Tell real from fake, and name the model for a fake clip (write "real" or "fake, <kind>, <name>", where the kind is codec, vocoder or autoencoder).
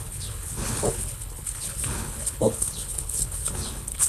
fake, codec, HILCodec